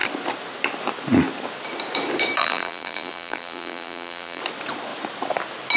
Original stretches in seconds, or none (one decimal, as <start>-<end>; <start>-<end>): 0.0-2.4; 4.4-5.8